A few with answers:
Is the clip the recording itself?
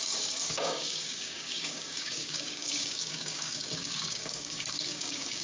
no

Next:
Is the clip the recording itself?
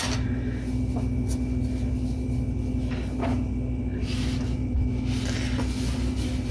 yes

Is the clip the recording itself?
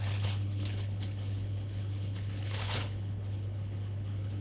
no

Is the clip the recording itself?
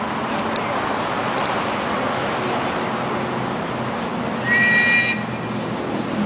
yes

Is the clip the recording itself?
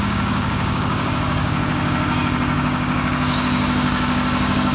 no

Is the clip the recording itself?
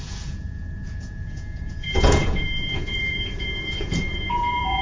no